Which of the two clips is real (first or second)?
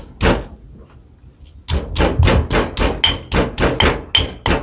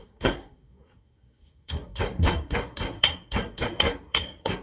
first